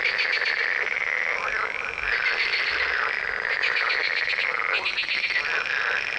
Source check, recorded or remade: recorded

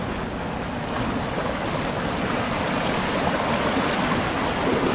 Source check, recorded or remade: recorded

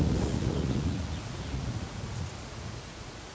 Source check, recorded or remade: remade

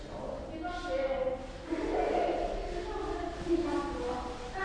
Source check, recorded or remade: recorded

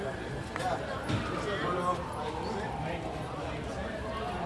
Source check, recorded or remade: recorded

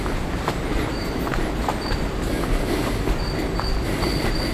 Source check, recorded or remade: recorded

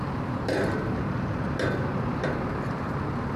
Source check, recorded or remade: recorded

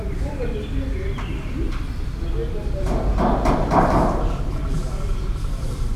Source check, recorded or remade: recorded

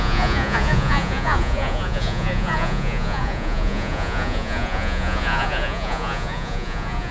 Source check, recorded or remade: remade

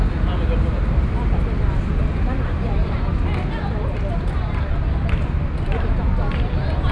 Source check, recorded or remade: recorded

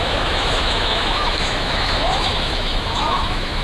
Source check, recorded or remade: remade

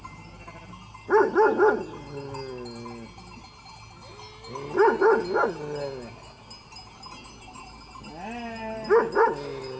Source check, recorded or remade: recorded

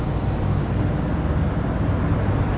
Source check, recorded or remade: recorded